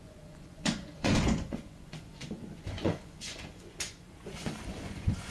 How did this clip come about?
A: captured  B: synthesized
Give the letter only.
B